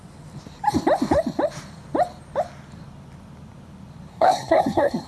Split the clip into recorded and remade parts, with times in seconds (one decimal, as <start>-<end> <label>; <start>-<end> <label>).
0.0-4.1 recorded; 4.1-5.1 remade